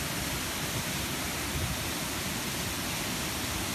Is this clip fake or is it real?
real